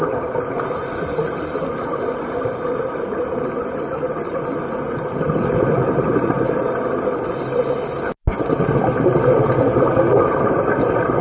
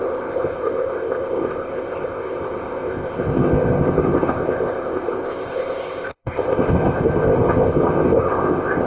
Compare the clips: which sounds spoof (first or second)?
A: second